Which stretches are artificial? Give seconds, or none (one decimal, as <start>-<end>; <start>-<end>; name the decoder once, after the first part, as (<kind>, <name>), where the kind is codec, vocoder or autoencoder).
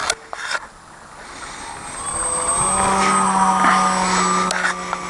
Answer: 0.0-2.5 (vocoder, BigVGAN v2)